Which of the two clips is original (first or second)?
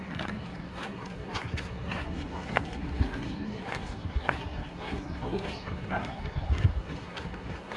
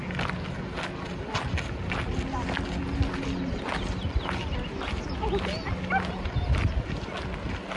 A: second